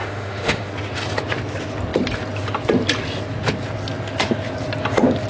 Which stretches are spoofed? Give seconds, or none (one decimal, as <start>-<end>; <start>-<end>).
0.0-0.7